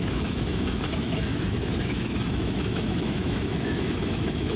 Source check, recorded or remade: remade